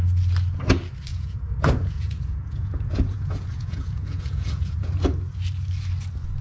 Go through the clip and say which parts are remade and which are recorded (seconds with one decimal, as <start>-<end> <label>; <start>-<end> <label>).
0.0-1.1 recorded; 1.1-4.9 remade; 4.9-6.4 recorded